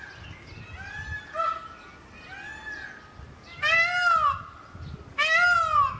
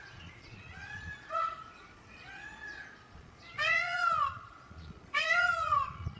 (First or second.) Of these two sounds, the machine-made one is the second